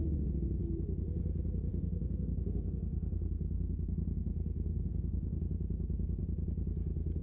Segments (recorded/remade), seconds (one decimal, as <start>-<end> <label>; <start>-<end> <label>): 0.0-1.7 recorded; 1.7-5.4 remade; 5.4-7.2 recorded